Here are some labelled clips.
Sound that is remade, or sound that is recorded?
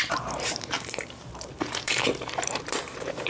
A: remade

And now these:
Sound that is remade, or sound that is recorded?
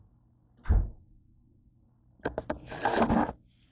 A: recorded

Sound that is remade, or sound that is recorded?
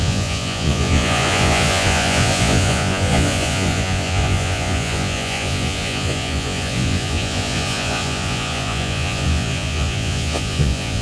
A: remade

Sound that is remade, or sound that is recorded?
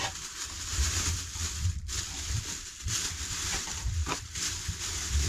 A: recorded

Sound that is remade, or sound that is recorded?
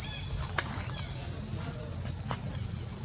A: recorded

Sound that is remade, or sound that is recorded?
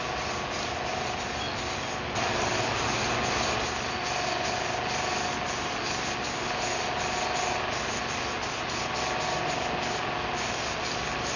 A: recorded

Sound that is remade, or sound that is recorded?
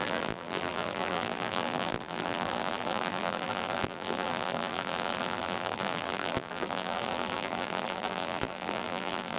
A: remade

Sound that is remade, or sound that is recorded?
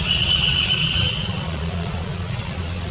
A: remade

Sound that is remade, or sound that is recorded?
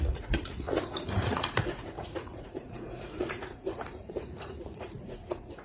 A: remade